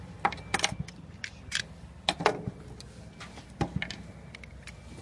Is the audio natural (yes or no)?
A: yes